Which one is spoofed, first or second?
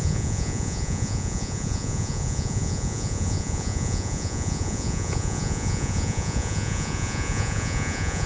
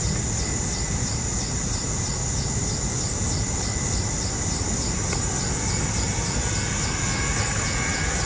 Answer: first